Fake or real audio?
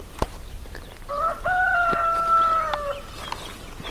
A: real